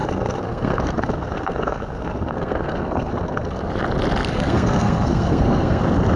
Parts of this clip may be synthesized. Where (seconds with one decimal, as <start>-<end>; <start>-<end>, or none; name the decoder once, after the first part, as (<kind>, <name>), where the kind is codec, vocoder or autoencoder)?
0.0-3.7 (codec, SNAC); 4.3-5.8